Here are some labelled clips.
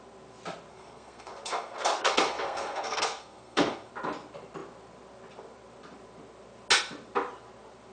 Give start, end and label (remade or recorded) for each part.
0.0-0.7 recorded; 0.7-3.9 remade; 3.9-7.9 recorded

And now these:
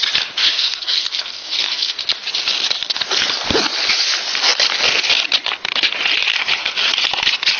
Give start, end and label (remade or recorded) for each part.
0.0-0.4 recorded; 0.4-2.0 remade; 2.0-7.6 recorded

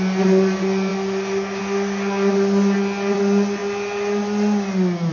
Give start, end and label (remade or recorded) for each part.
0.0-5.1 recorded